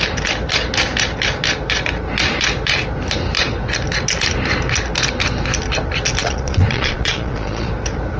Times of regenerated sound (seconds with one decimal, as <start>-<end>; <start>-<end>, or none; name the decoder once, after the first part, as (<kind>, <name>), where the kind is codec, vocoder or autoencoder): 6.2-7.7 (vocoder, Vocos)

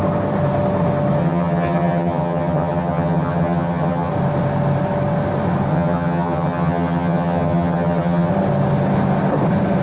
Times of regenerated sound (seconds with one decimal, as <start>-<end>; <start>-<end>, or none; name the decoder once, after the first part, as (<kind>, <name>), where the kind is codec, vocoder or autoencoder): 1.2-4.1 (vocoder, HiFi-GAN); 5.7-8.3

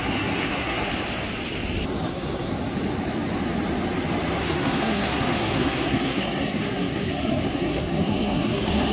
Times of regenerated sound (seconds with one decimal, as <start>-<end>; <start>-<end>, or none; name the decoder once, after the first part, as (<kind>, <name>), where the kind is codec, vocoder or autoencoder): 0.0-0.9 (codec, SNAC); 2.1-2.5; 4.4-8.9

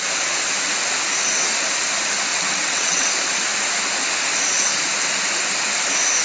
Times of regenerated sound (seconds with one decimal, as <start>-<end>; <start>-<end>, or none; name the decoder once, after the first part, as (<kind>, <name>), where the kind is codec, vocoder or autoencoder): 2.3-3.1 (vocoder, WaveNeXt)

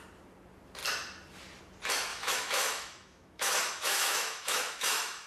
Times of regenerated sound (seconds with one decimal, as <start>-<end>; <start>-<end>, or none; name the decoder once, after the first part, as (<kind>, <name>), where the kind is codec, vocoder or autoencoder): 2.1-5.3 (autoencoder, DAC-VAE)

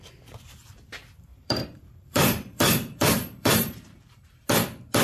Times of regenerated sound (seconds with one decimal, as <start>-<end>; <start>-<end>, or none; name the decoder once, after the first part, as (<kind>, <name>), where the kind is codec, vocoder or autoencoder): 1.3-4.3 (vocoder, BigVGAN v2)

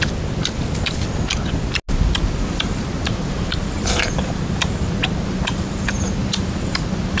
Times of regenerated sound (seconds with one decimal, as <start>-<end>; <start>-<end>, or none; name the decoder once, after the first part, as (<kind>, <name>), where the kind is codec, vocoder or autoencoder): 6.2-7.2 (vocoder, BigVGAN v2)